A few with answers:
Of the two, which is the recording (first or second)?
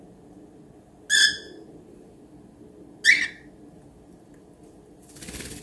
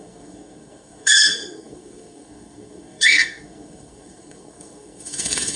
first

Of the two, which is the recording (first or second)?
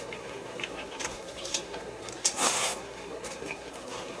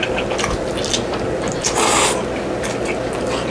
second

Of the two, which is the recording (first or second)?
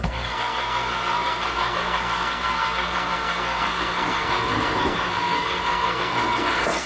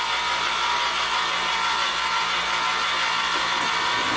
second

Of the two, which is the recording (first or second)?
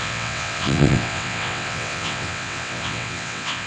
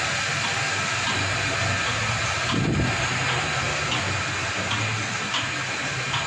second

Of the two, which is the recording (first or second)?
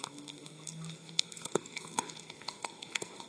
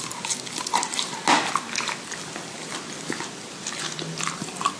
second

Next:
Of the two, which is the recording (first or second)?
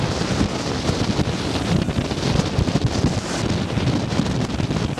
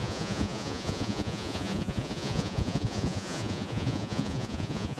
first